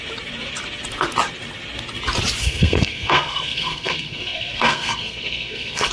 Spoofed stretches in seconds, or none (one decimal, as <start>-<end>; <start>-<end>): 2.4-5.9